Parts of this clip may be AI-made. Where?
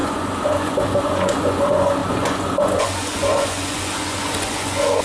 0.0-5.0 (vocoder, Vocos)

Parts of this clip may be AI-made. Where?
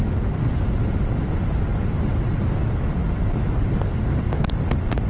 none